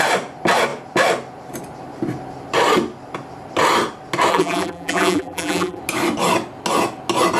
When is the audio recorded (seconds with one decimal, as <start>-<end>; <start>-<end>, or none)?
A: 0.0-4.3; 5.8-7.4